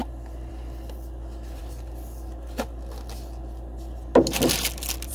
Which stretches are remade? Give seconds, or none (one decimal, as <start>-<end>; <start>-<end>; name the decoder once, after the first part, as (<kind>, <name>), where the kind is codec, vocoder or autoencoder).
none